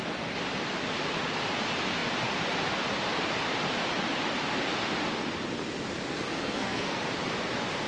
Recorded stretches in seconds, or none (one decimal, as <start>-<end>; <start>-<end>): 0.0-6.1; 7.0-7.9